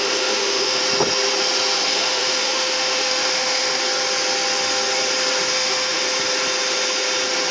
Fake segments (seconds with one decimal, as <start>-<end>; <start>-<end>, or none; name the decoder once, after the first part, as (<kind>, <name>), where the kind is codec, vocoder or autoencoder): 0.0-0.8 (autoencoder, DAC-VAE); 1.8-3.8; 5.5-6.0